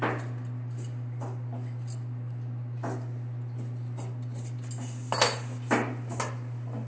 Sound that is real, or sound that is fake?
real